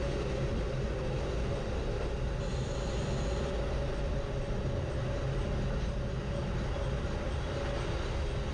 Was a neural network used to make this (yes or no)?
no